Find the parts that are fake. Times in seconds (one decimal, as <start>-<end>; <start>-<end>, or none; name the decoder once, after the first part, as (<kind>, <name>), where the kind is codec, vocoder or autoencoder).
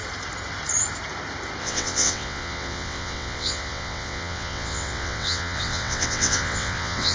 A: 1.6-7.1 (vocoder, WaveNeXt)